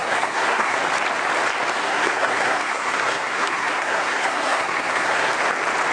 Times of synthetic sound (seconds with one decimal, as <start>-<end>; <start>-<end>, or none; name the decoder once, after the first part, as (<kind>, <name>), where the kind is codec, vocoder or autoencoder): 0.0-0.8 (codec, SNAC); 1.8-5.3